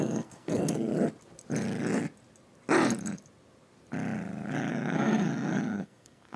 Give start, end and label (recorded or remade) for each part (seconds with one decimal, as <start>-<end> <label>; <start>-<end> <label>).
0.0-0.9 remade; 0.9-4.7 recorded; 4.7-6.4 remade